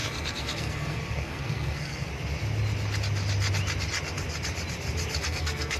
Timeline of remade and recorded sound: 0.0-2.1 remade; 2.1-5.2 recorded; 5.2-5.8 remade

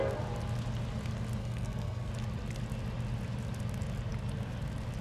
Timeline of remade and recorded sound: 0.0-1.4 recorded; 1.4-2.1 remade; 2.1-5.0 recorded

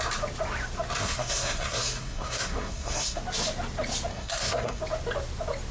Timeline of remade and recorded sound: 0.0-1.0 recorded; 1.0-3.2 remade; 3.2-4.1 recorded; 4.1-4.8 remade; 4.8-5.7 recorded

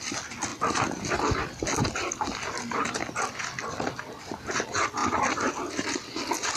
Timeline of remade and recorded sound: 0.0-6.6 recorded

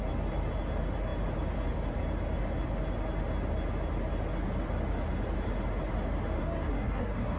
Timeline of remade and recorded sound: 0.0-6.4 recorded; 6.4-7.4 remade

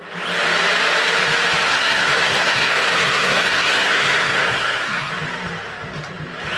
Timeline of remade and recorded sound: 0.0-1.7 recorded; 1.7-5.1 remade; 5.1-6.6 recorded

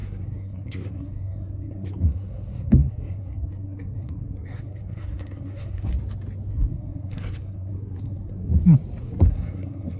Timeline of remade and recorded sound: 0.0-5.9 remade; 5.9-6.5 recorded; 6.5-8.5 remade; 8.5-9.0 recorded; 9.0-10.0 remade

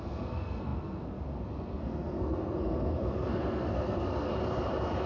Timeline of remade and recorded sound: 0.0-4.3 remade; 4.3-5.1 recorded